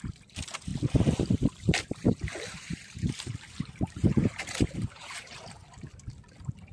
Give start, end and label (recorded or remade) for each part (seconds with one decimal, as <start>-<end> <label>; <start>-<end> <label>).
0.0-0.7 remade; 0.7-1.3 recorded; 1.3-5.6 remade; 5.6-6.7 recorded